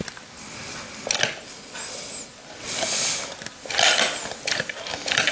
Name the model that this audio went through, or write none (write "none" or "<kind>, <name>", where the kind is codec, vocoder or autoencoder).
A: none